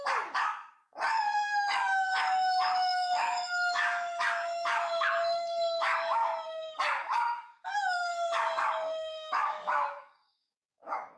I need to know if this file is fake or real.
fake